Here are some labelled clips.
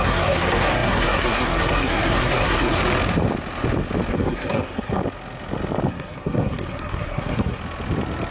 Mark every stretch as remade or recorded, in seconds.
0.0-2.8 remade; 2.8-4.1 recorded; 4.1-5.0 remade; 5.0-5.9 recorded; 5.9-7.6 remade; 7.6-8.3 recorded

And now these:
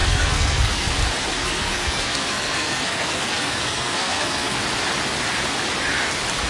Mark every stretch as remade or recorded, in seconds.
0.0-0.9 remade; 0.9-1.4 recorded; 1.4-4.6 remade; 4.6-6.5 recorded

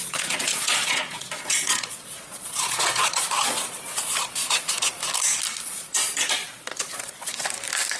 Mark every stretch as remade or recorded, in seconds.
0.0-5.0 remade; 5.0-5.6 recorded; 5.6-7.3 remade; 7.3-8.0 recorded

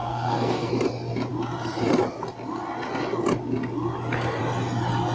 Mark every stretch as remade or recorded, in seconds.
0.0-0.7 remade; 0.7-5.1 recorded

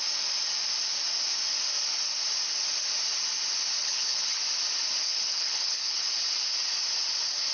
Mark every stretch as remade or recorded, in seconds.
0.0-3.8 recorded; 3.8-4.4 remade; 4.4-5.0 recorded; 5.0-6.1 remade; 6.1-7.5 recorded

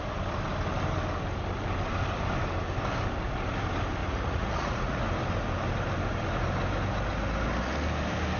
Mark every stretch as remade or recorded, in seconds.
0.0-4.0 recorded; 4.0-5.0 remade; 5.0-8.4 recorded